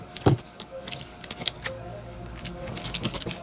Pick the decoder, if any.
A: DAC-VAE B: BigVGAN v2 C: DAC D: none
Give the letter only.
C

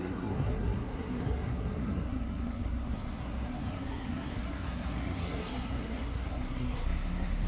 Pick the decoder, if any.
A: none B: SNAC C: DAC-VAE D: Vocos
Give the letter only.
B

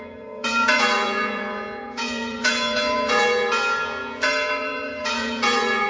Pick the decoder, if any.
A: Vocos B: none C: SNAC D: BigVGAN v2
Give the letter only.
A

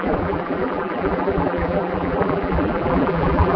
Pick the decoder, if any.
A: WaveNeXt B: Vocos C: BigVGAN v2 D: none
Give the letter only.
C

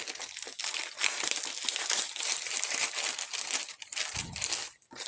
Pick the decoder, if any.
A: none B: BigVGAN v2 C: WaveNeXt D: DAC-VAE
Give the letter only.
A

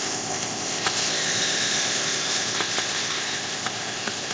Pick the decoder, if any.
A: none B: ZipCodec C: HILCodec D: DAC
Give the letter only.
B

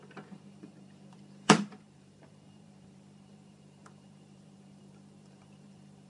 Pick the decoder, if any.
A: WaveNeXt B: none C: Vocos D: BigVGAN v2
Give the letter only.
D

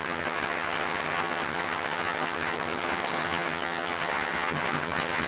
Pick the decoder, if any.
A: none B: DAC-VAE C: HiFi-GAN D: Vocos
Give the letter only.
C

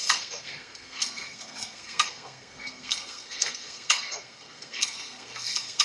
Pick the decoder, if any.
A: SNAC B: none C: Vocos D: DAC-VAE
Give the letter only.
A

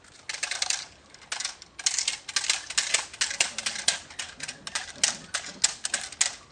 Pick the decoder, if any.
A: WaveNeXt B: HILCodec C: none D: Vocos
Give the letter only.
C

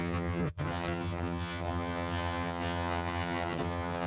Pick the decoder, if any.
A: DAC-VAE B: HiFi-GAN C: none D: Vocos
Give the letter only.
B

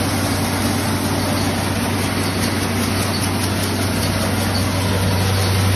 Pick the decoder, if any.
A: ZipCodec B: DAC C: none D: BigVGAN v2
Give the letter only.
C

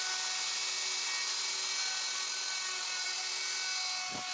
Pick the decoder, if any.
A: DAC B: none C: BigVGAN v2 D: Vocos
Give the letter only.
B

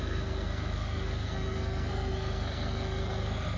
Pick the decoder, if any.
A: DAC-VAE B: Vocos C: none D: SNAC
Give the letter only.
D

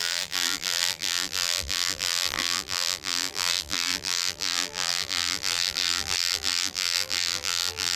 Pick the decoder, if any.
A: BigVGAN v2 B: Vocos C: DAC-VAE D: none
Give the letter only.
A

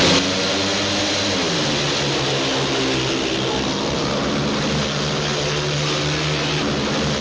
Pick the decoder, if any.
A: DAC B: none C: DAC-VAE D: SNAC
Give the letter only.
B